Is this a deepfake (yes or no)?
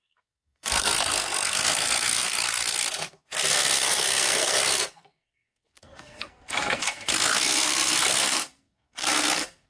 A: yes